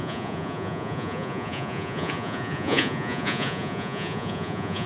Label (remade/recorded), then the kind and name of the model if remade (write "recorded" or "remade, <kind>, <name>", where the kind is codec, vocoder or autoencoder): remade, vocoder, Vocos